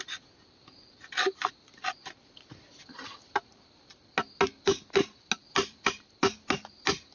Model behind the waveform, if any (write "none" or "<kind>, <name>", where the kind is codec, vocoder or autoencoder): none